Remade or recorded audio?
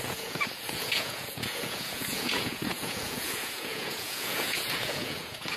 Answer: remade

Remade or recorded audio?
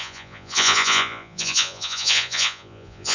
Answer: remade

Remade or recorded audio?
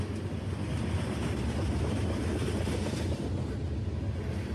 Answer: recorded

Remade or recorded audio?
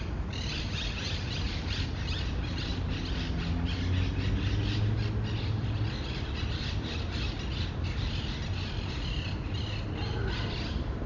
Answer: recorded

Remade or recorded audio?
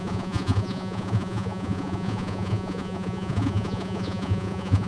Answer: remade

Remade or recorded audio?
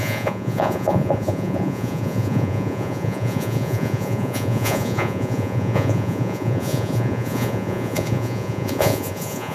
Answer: remade